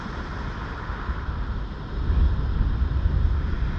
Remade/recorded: recorded